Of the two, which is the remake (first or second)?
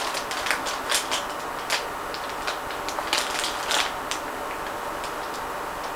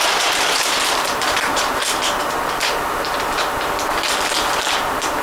second